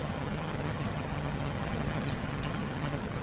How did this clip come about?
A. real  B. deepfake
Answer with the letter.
B